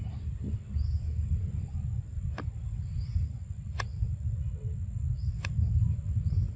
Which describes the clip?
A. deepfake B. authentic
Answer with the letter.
B